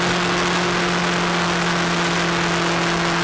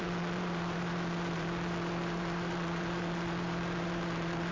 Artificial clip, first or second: second